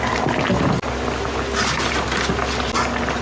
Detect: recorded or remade recorded